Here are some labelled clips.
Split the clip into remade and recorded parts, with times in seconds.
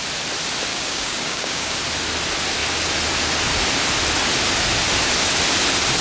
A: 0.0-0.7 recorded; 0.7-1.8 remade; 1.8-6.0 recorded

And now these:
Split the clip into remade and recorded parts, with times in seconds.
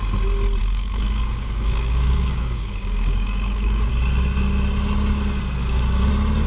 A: 0.0-0.6 recorded; 0.6-3.9 remade; 3.9-5.6 recorded; 5.6-6.1 remade; 6.1-6.5 recorded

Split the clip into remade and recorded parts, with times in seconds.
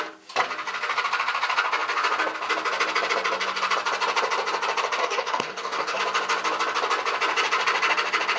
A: 0.0-5.0 recorded; 5.0-6.0 remade; 6.0-8.4 recorded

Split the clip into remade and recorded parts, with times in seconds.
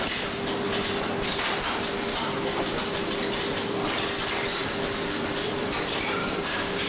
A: 0.0-2.1 recorded; 2.1-2.7 remade; 2.7-6.2 recorded; 6.2-6.9 remade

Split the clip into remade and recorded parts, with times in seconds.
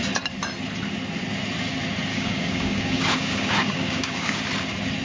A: 0.0-2.1 recorded; 2.1-4.4 remade; 4.4-5.0 recorded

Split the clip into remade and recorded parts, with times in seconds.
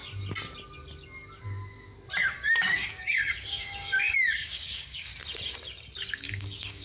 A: 0.0-2.2 recorded; 2.2-5.1 remade; 5.1-6.1 recorded; 6.1-6.8 remade